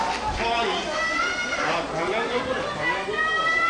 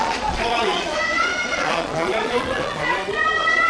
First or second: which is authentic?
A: first